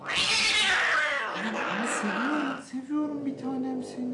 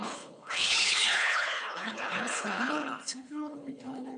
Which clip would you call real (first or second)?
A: first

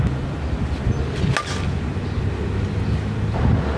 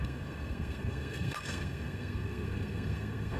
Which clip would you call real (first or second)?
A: first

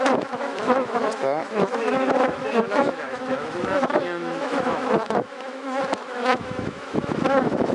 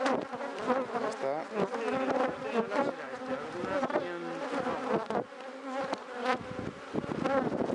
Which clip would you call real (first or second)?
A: second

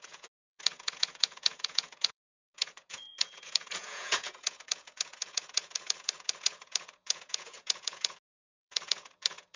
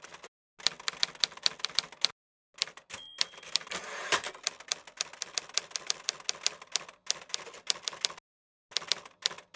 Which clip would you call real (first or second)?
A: second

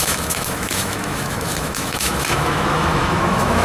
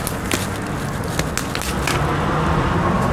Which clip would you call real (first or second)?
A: second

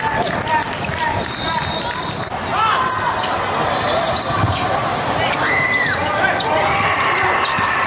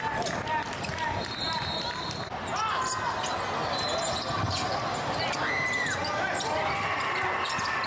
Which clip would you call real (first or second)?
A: second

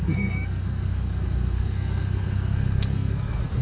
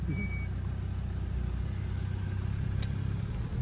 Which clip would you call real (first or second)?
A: second